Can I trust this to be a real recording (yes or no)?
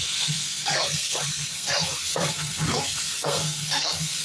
no